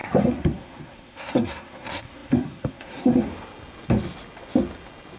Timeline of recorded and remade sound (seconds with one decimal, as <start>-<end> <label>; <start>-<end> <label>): 0.0-3.3 remade; 3.3-5.2 recorded